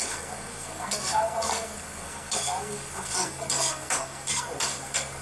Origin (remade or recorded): remade